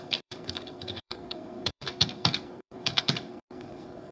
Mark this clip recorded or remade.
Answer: remade